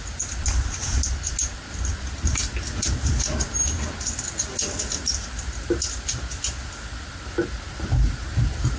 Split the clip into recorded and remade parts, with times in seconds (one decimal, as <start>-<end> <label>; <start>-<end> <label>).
0.0-8.8 recorded